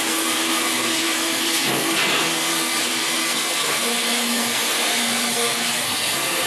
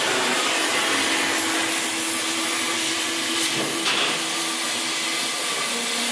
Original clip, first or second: second